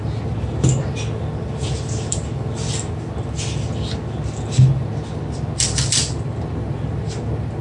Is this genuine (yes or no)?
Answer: yes